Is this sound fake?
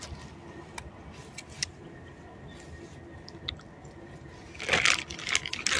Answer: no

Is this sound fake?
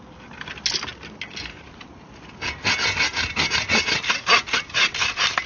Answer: no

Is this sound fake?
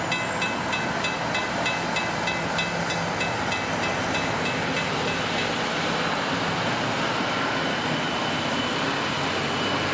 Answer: no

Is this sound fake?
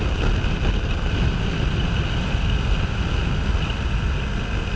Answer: no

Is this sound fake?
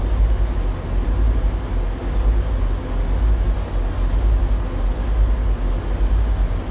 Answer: no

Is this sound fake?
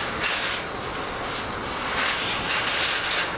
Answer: no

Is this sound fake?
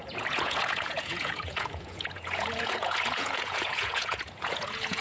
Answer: yes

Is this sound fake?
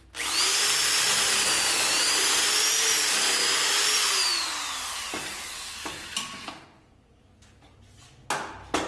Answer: no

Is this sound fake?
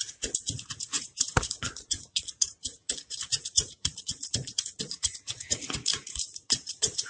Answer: yes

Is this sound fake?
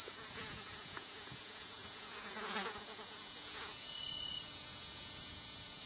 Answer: yes